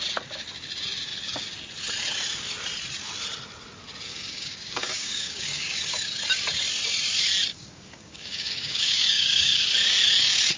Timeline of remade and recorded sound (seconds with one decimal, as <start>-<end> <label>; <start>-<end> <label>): 0.0-4.1 recorded; 4.1-5.8 remade; 5.8-7.5 recorded; 7.5-9.6 remade; 9.6-10.6 recorded